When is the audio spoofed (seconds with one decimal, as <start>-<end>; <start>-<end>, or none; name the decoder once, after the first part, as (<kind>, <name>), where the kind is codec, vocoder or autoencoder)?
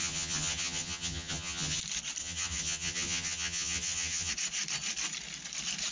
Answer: 0.0-1.8 (vocoder, HiFi-GAN); 2.2-4.3